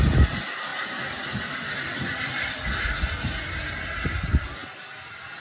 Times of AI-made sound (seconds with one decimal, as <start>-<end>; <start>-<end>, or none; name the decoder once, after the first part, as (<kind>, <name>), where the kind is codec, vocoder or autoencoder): none